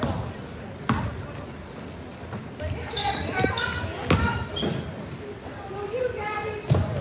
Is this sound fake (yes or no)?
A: no